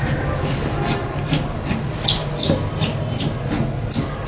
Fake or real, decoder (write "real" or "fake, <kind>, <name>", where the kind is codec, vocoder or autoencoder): real